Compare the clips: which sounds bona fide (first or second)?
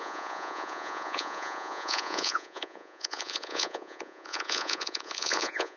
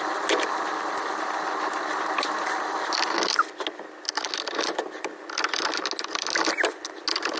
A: second